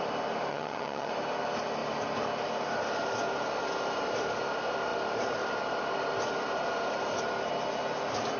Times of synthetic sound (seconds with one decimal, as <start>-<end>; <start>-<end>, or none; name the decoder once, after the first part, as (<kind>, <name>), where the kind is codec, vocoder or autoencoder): 0.5-1.1 (vocoder, HiFi-GAN)